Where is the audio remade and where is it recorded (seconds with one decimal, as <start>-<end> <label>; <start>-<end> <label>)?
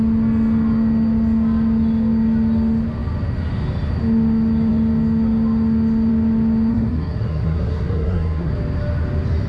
0.0-6.7 recorded; 6.7-8.5 remade; 8.5-9.5 recorded